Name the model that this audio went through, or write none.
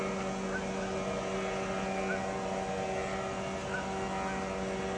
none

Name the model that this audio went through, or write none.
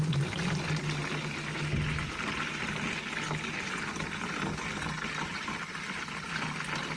none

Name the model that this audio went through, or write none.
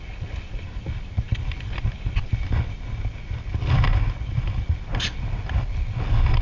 none